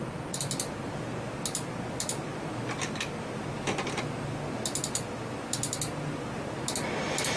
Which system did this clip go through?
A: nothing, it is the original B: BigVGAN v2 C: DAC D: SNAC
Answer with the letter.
A